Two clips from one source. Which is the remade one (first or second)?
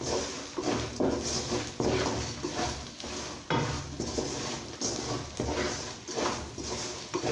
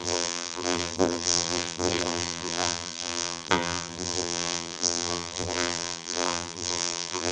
second